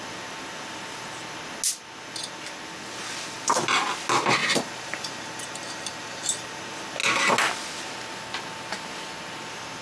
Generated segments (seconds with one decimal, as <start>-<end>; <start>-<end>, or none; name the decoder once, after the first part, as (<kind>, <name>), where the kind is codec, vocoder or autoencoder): 4.4-6.6 (vocoder, BigVGAN v2)